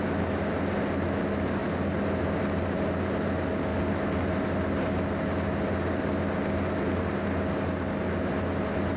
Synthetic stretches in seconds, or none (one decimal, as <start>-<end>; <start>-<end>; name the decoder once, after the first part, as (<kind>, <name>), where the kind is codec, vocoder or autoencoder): none